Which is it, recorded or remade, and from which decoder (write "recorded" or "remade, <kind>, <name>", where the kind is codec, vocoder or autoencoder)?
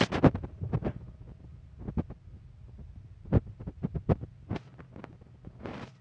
recorded